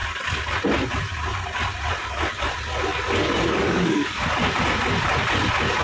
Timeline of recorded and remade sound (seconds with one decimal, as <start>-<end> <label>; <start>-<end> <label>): 0.0-2.9 recorded; 2.9-4.2 remade; 4.2-5.8 recorded